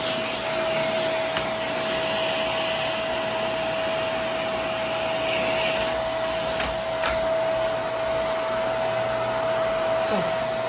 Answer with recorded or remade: recorded